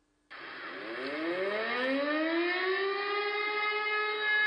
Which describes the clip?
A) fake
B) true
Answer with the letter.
B